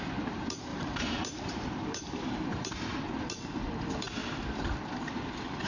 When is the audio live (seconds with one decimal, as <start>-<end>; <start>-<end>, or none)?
0.0-0.7; 3.1-4.2; 5.1-5.7